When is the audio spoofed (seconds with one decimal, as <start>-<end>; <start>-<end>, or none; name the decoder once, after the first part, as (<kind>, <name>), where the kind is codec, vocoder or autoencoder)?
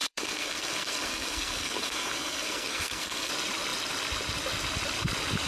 0.0-3.3 (codec, SNAC)